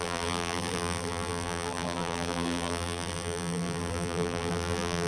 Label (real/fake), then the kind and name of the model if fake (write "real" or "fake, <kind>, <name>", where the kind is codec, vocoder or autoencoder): fake, vocoder, BigVGAN v2